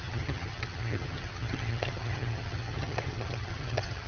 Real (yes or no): no